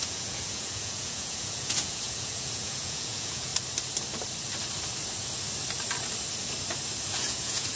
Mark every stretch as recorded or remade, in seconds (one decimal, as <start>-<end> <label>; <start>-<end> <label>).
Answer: 0.0-3.5 remade; 3.5-7.1 recorded; 7.1-7.8 remade